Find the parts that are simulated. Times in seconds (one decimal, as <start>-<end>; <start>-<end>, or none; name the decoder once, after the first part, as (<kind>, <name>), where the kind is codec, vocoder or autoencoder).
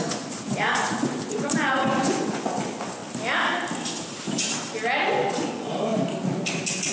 0.0-3.0 (vocoder, Vocos); 5.1-5.9